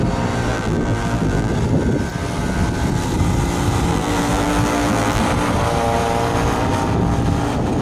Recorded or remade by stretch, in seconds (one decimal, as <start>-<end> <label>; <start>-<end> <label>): 0.0-0.5 recorded; 0.5-1.5 remade; 1.5-3.9 recorded; 3.9-5.2 remade; 5.2-7.8 recorded